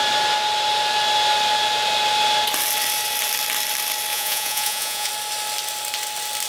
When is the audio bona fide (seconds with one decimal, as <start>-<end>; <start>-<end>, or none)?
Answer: 0.0-4.1; 5.1-6.5